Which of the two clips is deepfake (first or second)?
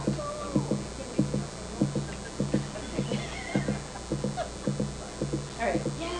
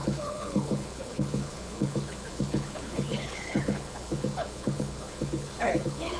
second